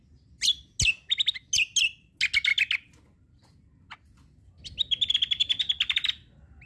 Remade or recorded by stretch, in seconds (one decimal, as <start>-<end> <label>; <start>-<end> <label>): 0.0-6.7 recorded